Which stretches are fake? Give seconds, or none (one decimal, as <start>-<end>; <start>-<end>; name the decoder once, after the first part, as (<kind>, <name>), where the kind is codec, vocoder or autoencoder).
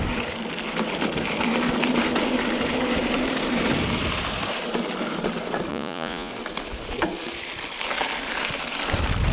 5.7-6.3 (vocoder, Vocos)